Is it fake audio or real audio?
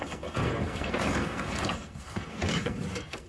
fake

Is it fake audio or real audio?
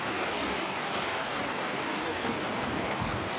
fake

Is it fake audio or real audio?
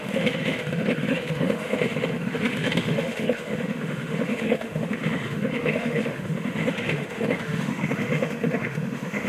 fake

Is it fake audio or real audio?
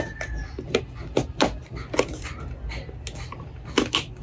real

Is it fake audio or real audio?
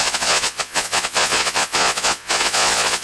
fake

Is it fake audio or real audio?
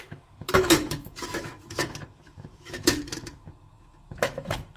fake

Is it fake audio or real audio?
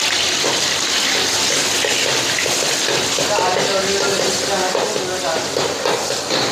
real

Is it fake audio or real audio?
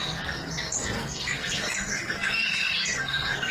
fake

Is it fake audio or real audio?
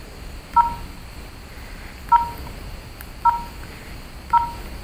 real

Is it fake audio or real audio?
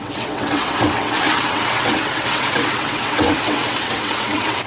fake